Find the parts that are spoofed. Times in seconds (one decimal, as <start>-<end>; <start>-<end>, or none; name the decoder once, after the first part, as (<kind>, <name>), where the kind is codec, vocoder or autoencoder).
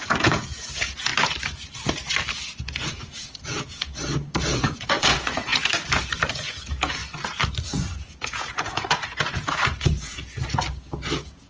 0.0-1.1 (vocoder, Vocos); 2.6-5.5; 6.3-7.0; 7.6-10.2; 11.1-11.5